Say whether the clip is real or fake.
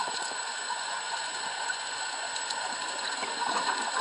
fake